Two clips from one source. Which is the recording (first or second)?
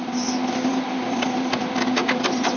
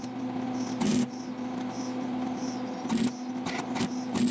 second